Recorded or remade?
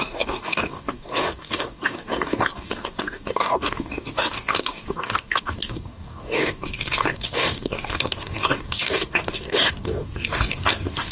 remade